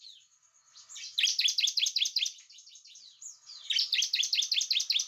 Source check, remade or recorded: recorded